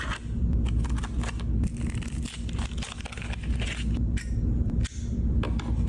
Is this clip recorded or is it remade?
recorded